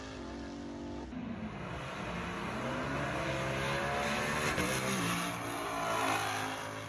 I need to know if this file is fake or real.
real